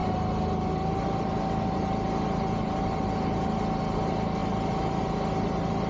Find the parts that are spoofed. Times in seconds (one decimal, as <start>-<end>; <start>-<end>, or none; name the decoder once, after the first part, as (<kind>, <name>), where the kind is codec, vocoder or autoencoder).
none